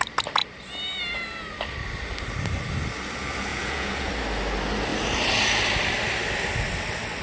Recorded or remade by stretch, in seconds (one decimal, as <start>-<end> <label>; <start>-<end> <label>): 0.0-3.5 recorded; 3.5-4.1 remade; 4.1-7.2 recorded